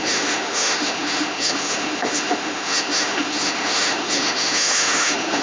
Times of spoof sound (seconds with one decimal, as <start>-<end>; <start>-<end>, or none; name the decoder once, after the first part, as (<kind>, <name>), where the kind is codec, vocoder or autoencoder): 0.0-5.4 (autoencoder, DAC-VAE)

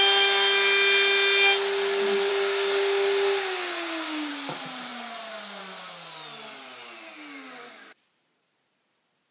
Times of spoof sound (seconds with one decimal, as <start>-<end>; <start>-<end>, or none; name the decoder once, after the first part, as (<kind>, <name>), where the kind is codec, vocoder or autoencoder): 2.3-4.3 (codec, DAC)

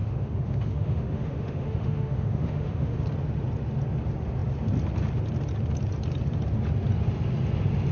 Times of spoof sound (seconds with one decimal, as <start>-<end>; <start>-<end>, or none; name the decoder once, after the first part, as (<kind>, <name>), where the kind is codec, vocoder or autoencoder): 0.0-3.0 (autoencoder, DAC-VAE)

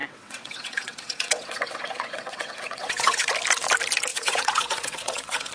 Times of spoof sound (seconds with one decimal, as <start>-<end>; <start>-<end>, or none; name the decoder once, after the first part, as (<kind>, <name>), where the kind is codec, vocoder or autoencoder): 0.0-3.3 (vocoder, WaveNeXt); 4.1-5.5

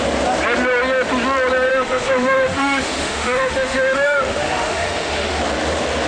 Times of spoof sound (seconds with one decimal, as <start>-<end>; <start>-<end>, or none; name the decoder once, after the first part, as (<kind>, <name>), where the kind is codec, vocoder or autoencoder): 1.7-5.4 (autoencoder, DAC-VAE)